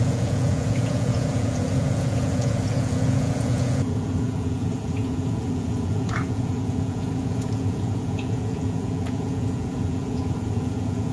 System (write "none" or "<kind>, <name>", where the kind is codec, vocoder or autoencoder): vocoder, Vocos